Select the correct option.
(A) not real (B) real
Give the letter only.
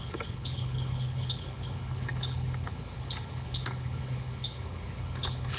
A